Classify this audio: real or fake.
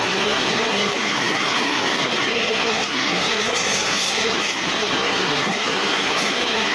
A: fake